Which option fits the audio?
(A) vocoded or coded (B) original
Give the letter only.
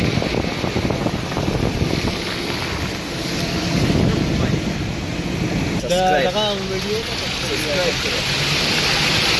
B